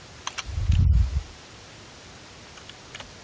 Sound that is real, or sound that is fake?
real